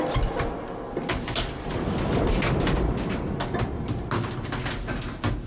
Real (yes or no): yes